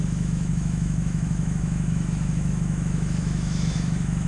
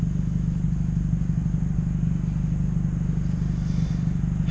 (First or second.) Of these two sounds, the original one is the second